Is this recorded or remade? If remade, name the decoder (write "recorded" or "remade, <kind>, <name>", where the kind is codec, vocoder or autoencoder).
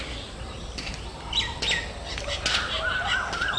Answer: recorded